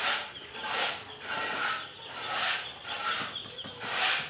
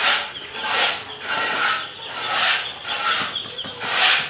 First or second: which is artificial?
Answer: first